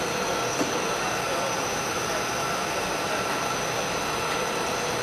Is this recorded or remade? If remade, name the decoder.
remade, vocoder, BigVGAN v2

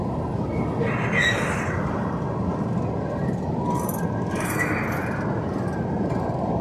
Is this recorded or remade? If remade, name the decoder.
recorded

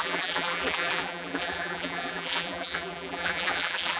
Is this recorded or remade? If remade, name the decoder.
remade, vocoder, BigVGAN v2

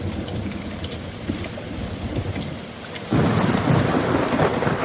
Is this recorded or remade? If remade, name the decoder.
remade, vocoder, BigVGAN v2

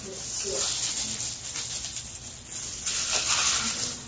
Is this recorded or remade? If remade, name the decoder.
recorded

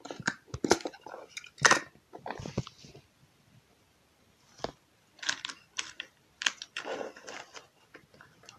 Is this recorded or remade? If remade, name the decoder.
remade, vocoder, BigVGAN v2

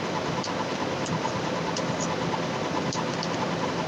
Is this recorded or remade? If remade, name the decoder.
recorded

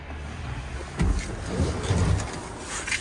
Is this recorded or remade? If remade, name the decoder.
recorded